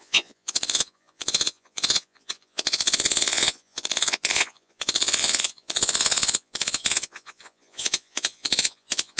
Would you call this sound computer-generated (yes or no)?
yes